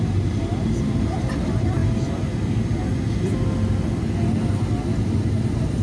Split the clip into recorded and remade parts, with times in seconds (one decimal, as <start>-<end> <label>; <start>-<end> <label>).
0.0-1.8 remade; 1.8-5.3 recorded; 5.3-5.8 remade

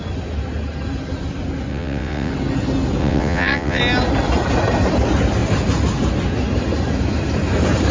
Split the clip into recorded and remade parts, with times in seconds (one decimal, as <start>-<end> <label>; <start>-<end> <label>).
0.0-1.7 recorded; 1.7-2.3 remade; 2.3-3.0 recorded; 3.0-3.8 remade; 3.8-7.9 recorded

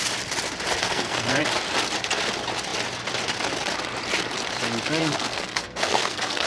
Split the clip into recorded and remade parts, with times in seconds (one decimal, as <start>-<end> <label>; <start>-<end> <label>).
0.0-0.8 recorded; 0.8-1.4 remade; 1.4-5.0 recorded; 5.0-6.5 remade